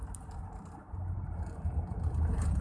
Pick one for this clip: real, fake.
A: fake